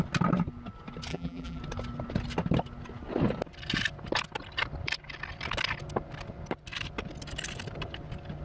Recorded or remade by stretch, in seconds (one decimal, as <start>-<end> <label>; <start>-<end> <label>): 0.0-1.1 recorded; 1.1-1.6 remade; 1.6-8.4 recorded

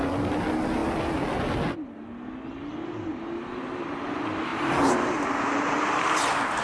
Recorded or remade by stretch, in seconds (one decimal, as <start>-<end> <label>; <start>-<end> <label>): 0.0-3.6 recorded; 3.6-4.1 remade; 4.1-4.5 recorded; 4.5-6.1 remade; 6.1-6.6 recorded